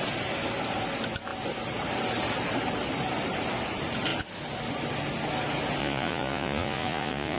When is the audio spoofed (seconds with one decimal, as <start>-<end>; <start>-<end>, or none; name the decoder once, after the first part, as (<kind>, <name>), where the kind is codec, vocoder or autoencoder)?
5.8-7.4 (vocoder, Vocos)